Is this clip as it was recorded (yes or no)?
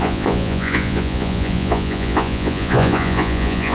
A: no